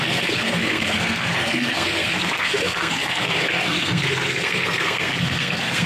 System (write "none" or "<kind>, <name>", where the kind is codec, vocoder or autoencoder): codec, SNAC